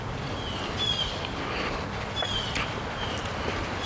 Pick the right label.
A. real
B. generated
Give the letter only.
A